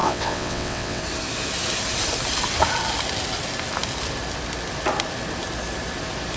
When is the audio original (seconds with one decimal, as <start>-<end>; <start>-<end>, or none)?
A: 1.0-6.4